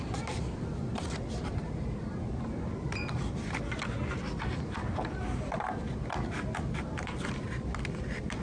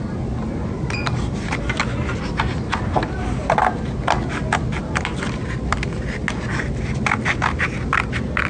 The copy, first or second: first